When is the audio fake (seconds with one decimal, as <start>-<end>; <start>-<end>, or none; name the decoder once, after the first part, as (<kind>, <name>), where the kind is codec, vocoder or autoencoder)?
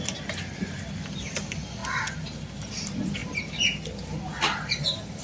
none